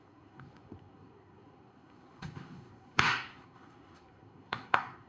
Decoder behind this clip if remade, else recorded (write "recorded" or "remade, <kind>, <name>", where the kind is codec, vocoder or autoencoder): remade, codec, SNAC